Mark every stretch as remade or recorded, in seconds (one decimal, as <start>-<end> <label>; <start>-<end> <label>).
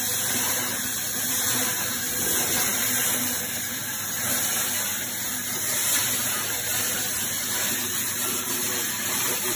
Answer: 0.0-9.6 remade